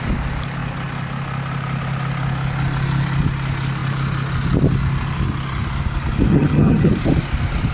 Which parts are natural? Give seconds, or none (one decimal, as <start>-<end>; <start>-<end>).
0.0-6.3; 6.9-7.7